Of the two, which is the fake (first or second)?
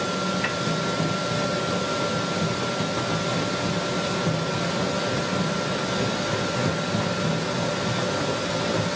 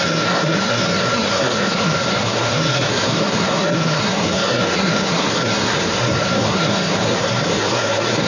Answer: second